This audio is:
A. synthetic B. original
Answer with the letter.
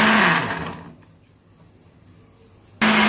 B